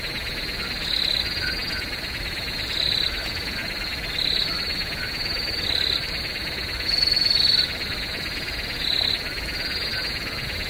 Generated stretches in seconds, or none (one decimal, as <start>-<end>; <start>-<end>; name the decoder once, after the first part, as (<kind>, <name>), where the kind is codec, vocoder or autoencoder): 1.6-2.4 (vocoder, BigVGAN v2)